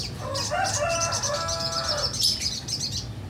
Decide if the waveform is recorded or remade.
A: recorded